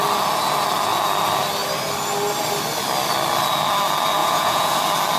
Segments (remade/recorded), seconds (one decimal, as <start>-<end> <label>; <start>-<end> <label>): 0.0-4.2 recorded; 4.2-4.8 remade; 4.8-5.2 recorded